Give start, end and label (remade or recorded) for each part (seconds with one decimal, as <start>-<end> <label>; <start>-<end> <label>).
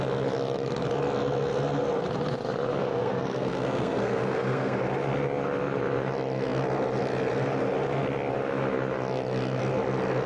0.0-2.8 recorded; 2.8-4.8 remade; 4.8-10.3 recorded